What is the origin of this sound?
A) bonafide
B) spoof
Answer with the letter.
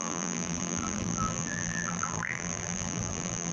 B